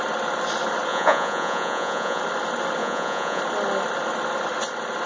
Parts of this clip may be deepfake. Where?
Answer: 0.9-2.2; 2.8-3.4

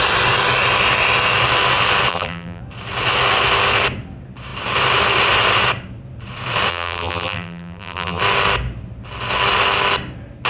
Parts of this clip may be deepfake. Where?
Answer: 2.1-2.6; 6.7-8.2

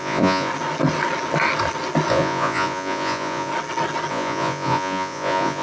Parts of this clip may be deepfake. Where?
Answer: 0.0-0.5; 2.1-3.5; 4.1-5.6

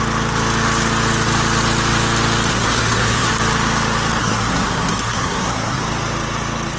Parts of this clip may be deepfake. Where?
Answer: 2.5-3.3; 4.2-5.8

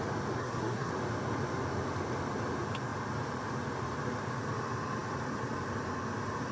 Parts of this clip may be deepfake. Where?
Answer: 0.4-0.9

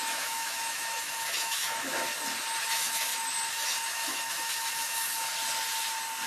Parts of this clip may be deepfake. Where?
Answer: 0.0-2.1; 2.6-5.3